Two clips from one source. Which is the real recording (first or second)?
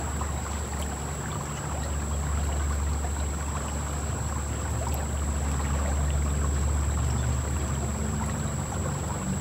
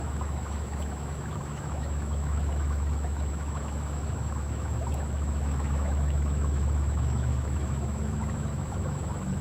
first